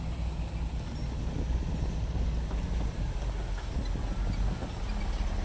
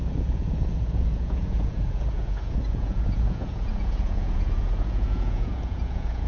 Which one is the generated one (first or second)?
second